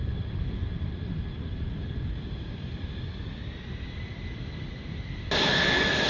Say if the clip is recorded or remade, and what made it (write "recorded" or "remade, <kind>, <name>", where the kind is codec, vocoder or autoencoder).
recorded